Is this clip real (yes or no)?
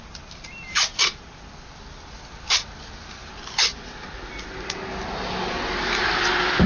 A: yes